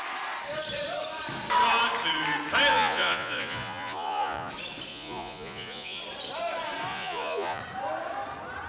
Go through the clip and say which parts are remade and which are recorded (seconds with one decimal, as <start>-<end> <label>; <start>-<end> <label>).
0.0-2.7 recorded; 2.7-4.5 remade; 4.5-4.9 recorded; 4.9-6.0 remade; 6.0-6.9 recorded; 6.9-7.6 remade; 7.6-8.7 recorded